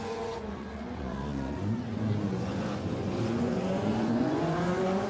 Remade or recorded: remade